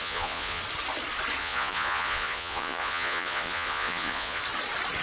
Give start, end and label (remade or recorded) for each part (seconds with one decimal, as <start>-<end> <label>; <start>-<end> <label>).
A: 0.0-0.6 remade; 0.6-1.4 recorded; 1.4-4.4 remade; 4.4-5.0 recorded